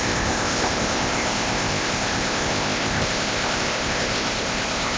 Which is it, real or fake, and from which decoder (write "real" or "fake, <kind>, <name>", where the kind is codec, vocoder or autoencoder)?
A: fake, codec, ZipCodec